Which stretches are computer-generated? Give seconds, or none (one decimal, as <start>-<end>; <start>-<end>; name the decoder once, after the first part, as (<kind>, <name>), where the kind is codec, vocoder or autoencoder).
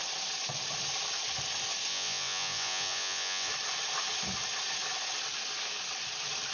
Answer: 1.9-3.5 (vocoder, Vocos)